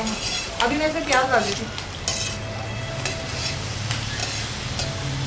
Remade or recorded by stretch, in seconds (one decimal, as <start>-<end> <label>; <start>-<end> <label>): 0.0-1.4 remade; 1.4-3.2 recorded; 3.2-4.2 remade; 4.2-5.3 recorded